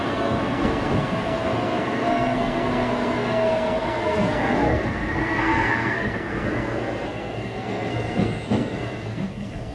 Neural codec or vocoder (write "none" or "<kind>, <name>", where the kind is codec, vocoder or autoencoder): codec, SNAC